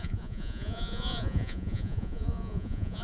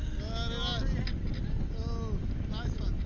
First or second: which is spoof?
first